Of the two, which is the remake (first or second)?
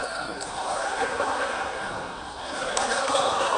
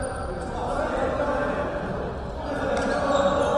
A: first